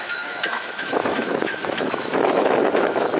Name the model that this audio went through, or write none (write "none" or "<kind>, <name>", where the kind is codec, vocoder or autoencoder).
autoencoder, DAC-VAE